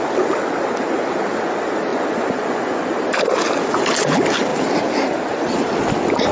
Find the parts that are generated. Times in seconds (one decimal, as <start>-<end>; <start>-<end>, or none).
1.9-2.9